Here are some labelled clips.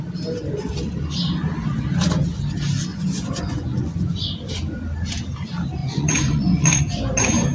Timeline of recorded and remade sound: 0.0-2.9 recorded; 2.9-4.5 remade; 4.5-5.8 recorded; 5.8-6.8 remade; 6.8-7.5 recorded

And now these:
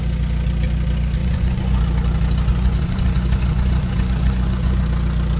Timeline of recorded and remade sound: 0.0-1.2 recorded; 1.2-1.8 remade; 1.8-2.5 recorded; 2.5-4.8 remade; 4.8-5.4 recorded

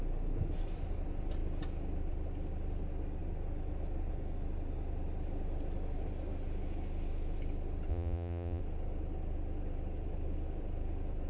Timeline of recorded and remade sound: 0.0-7.9 recorded; 7.9-8.6 remade; 8.6-11.3 recorded

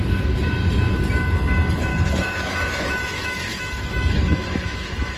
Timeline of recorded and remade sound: 0.0-1.9 recorded; 1.9-5.2 remade

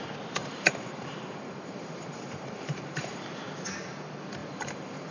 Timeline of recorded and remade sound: 0.0-0.4 recorded; 0.4-3.2 remade; 3.2-4.4 recorded; 4.4-5.1 remade